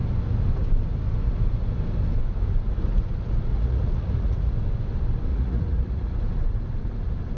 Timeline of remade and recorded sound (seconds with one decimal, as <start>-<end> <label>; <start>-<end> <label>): 0.0-3.5 recorded; 3.5-4.5 remade; 4.5-5.3 recorded; 5.3-6.1 remade; 6.1-7.4 recorded